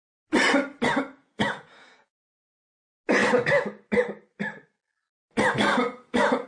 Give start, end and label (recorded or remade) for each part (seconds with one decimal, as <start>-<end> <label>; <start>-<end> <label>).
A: 0.0-1.2 recorded; 1.2-2.4 remade; 2.4-6.5 recorded